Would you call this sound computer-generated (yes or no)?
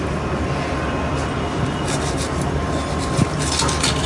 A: no